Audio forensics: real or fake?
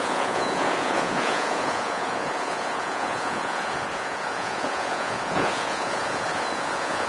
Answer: fake